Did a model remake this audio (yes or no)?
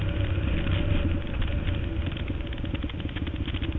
no